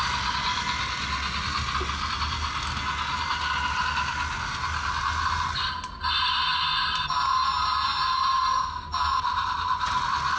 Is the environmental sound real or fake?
real